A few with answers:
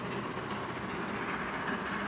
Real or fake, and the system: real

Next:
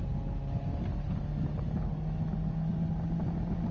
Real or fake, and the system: real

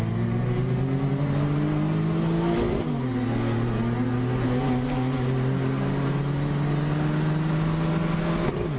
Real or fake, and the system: real